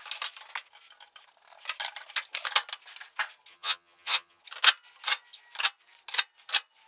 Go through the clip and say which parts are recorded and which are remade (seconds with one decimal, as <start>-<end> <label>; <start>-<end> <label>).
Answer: 0.0-3.5 recorded; 3.5-4.4 remade; 4.4-6.9 recorded